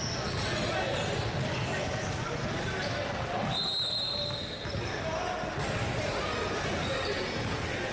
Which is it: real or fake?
real